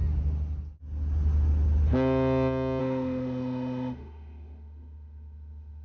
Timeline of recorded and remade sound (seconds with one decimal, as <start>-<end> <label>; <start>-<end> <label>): 0.0-2.8 recorded; 2.8-5.8 remade